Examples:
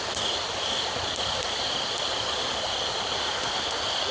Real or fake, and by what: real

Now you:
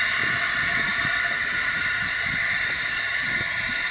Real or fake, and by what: fake, vocoder, BigVGAN v2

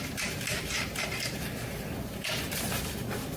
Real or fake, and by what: fake, vocoder, BigVGAN v2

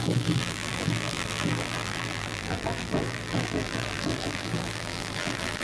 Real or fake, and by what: fake, vocoder, BigVGAN v2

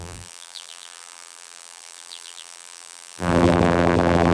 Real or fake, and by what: fake, vocoder, BigVGAN v2